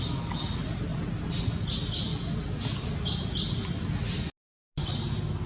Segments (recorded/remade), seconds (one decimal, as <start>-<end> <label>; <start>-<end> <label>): 0.0-5.5 recorded

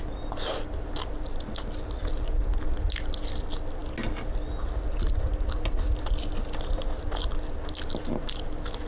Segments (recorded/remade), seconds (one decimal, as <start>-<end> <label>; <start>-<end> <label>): 0.0-8.9 recorded

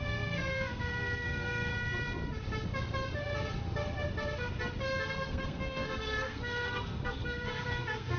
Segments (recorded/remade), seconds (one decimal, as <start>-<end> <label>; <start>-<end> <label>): 0.0-1.7 remade; 1.7-5.1 recorded; 5.1-8.2 remade